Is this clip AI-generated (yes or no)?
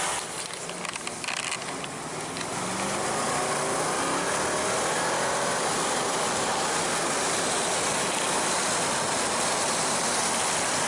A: no